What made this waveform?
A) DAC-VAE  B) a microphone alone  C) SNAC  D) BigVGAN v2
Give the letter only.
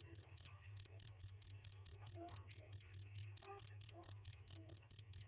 C